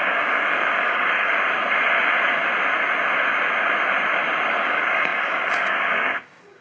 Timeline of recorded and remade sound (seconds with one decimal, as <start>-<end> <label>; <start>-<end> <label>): 0.0-1.3 remade; 1.3-4.5 recorded; 4.5-6.6 remade

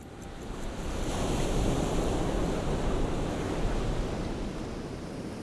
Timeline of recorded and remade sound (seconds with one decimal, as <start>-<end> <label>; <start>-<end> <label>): 0.0-2.4 remade; 2.4-5.4 recorded

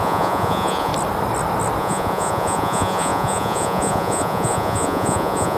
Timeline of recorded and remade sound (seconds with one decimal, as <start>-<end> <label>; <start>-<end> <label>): 0.0-0.9 remade; 0.9-1.8 recorded; 1.8-5.6 remade

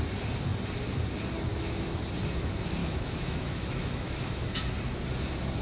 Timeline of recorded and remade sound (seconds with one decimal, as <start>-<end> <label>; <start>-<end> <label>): 0.0-1.5 recorded; 1.5-2.0 remade; 2.0-2.8 recorded; 2.8-4.6 remade; 4.6-5.6 recorded

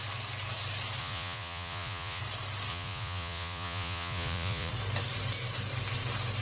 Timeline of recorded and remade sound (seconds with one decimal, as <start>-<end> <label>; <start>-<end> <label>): 0.0-1.0 recorded; 1.0-2.2 remade; 2.2-2.7 recorded; 2.7-4.7 remade; 4.7-6.4 recorded

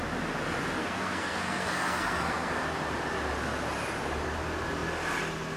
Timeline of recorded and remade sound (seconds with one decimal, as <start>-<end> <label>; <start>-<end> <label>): 0.0-0.8 recorded; 0.8-2.5 remade; 2.5-5.6 recorded

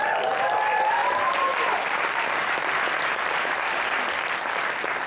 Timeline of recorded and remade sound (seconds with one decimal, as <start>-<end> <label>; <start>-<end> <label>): 0.0-1.0 recorded; 1.0-4.0 remade; 4.0-5.1 recorded